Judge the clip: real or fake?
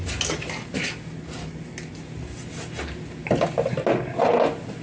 real